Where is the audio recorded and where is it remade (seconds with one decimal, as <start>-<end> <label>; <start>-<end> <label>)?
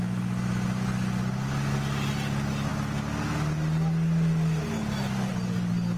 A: 0.0-6.0 recorded